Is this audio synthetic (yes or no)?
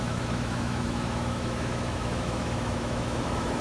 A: yes